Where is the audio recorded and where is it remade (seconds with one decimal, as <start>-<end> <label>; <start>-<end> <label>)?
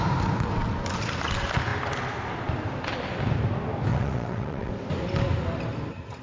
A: 0.0-3.9 recorded; 3.9-4.7 remade; 4.7-6.2 recorded